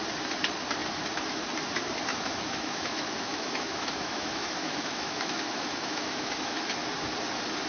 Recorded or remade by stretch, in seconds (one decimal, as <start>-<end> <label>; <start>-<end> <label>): 0.0-2.1 recorded; 2.1-6.7 remade; 6.7-7.7 recorded